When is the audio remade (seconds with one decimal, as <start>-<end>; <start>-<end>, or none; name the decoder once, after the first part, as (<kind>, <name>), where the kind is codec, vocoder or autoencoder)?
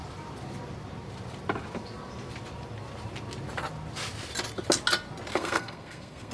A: 5.3-6.3 (codec, SNAC)